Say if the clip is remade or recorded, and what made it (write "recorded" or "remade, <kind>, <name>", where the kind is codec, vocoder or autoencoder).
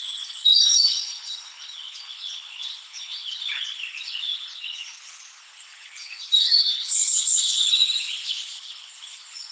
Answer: remade, codec, HILCodec